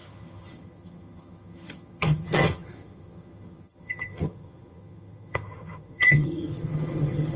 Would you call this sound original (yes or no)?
no